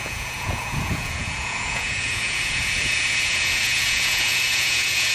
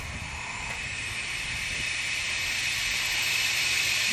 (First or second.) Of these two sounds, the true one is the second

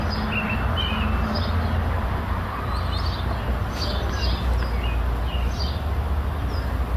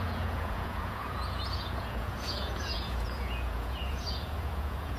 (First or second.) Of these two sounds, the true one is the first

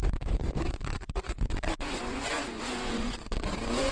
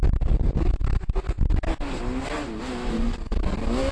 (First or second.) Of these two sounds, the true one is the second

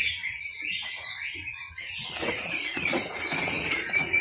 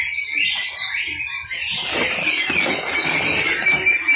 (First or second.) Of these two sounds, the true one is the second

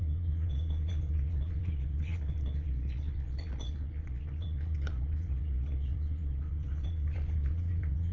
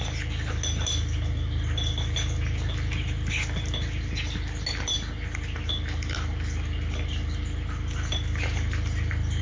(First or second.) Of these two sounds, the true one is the second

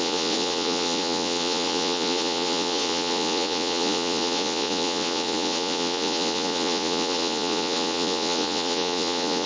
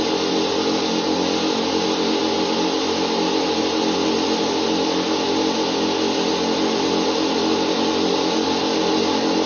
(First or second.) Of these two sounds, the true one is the second